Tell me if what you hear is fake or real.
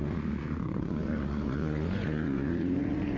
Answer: fake